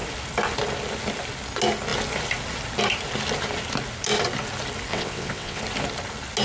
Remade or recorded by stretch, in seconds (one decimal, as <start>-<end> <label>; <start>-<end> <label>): 0.0-4.9 recorded; 4.9-5.6 remade; 5.6-6.4 recorded